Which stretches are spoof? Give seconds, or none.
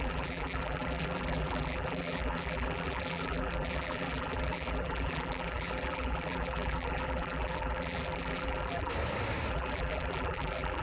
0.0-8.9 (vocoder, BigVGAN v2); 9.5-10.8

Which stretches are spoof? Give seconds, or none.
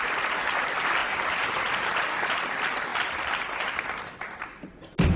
1.0-1.7 (vocoder, BigVGAN v2)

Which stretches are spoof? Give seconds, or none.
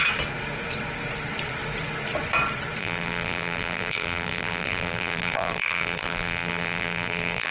2.8-7.5 (vocoder, BigVGAN v2)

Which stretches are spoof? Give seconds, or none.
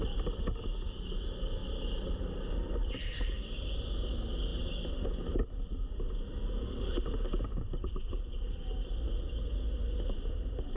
1.6-3.3 (vocoder, BigVGAN v2)